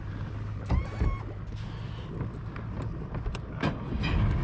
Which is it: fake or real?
real